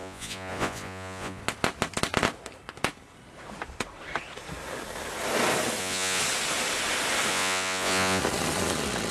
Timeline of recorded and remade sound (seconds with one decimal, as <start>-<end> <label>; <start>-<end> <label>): 0.0-1.4 remade; 1.4-5.8 recorded; 5.8-6.2 remade; 6.2-7.3 recorded; 7.3-8.2 remade; 8.2-9.1 recorded